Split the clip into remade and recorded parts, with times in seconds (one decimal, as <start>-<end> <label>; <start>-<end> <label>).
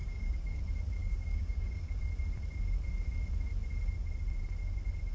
0.0-0.6 remade; 0.6-1.0 recorded; 1.0-1.9 remade; 1.9-5.1 recorded